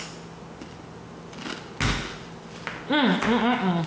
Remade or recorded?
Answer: recorded